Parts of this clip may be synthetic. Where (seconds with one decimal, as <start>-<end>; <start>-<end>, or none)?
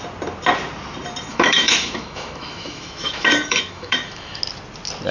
1.3-4.4